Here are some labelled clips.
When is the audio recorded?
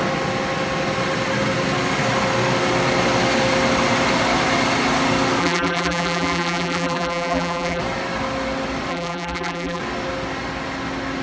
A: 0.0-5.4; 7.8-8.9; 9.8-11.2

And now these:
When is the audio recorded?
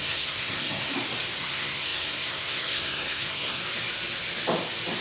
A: 0.9-1.4; 3.6-5.0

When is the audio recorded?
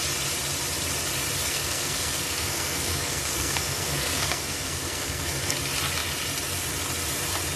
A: 0.0-1.4; 5.6-7.6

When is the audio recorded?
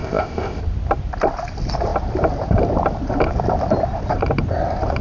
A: 0.6-5.0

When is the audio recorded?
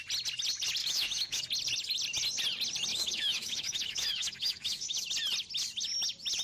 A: 0.0-0.8; 1.4-2.9; 5.1-6.4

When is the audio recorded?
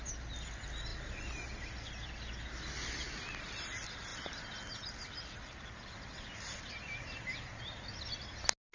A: 0.0-8.7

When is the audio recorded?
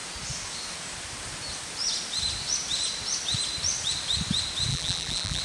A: 0.0-4.7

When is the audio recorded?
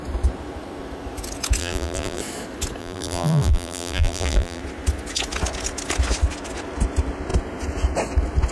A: 0.0-1.6; 2.2-2.8; 4.6-8.5